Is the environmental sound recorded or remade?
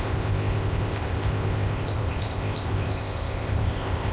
remade